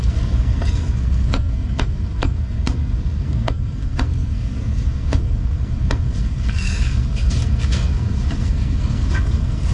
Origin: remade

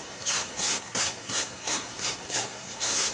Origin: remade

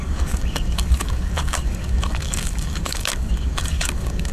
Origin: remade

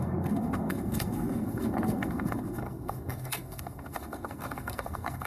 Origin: remade